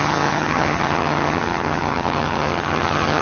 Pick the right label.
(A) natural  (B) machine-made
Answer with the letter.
B